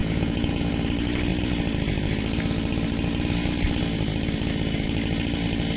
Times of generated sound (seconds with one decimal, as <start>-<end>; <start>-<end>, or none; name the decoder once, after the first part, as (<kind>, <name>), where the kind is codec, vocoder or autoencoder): 0.0-0.7 (vocoder, Vocos)